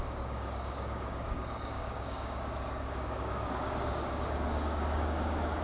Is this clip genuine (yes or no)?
no